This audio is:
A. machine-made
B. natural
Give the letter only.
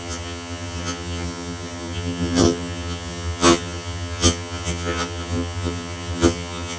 A